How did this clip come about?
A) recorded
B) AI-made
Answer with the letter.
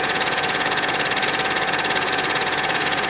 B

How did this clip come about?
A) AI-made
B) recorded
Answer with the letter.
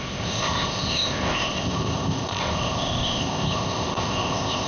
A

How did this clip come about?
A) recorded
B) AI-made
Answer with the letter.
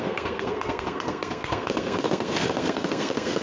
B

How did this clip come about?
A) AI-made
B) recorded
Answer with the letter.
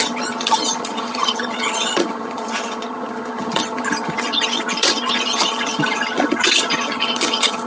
A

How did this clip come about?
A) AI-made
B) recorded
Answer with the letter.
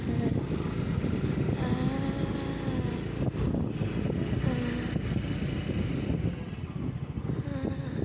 B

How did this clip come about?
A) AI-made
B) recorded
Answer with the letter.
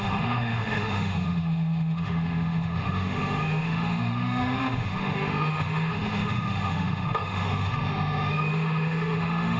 A